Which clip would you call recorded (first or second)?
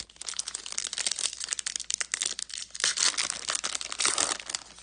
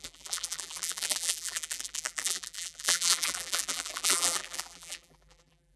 first